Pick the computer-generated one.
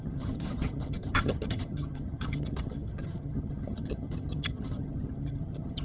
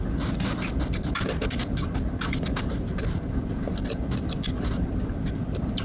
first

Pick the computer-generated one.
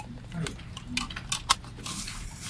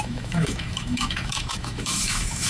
second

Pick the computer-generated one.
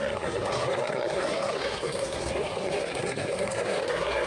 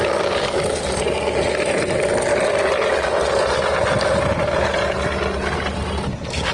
first